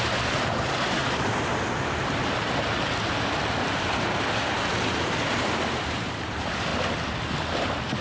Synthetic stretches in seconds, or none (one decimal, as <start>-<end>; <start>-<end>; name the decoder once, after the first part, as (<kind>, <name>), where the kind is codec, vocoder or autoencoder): 0.0-1.0 (vocoder, BigVGAN v2); 5.8-6.7; 7.5-8.0